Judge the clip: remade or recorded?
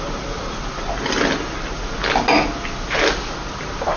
recorded